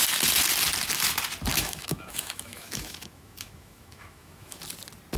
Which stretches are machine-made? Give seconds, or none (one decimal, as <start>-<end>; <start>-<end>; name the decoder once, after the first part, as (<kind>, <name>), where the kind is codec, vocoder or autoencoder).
1.5-4.6 (autoencoder, DAC-VAE)